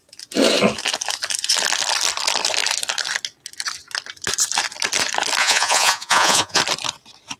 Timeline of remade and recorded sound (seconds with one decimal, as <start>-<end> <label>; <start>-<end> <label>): 0.0-5.4 recorded; 5.4-6.6 remade; 6.6-7.4 recorded